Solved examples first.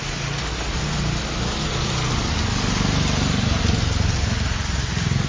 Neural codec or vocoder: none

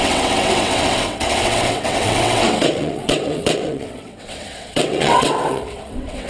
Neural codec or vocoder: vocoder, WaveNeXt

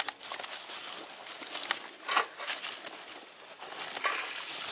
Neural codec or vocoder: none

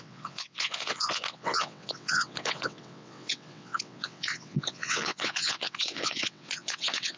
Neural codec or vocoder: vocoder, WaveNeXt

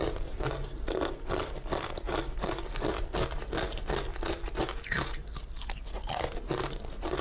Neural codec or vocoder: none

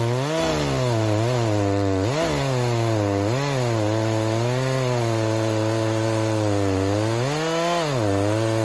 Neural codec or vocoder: none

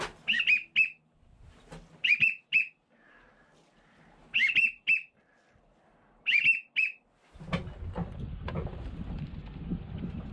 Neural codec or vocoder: none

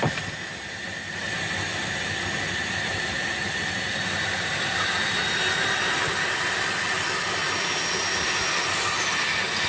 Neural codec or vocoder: none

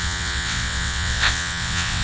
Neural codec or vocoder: vocoder, WaveNeXt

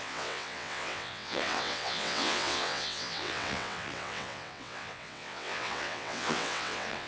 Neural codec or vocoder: vocoder, WaveNeXt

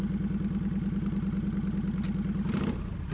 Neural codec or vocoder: none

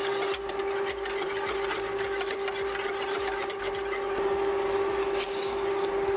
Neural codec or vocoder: none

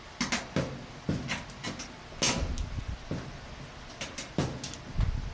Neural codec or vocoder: none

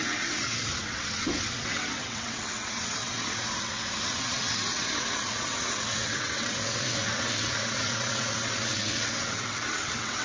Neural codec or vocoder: vocoder, WaveNeXt